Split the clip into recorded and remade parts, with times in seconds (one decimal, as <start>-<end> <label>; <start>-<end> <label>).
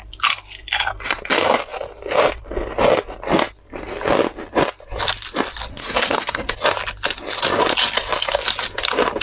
0.0-5.7 recorded; 5.7-6.5 remade; 6.5-9.2 recorded